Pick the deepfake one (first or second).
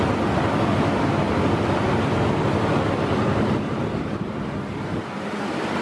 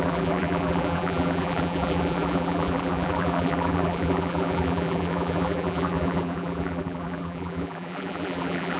second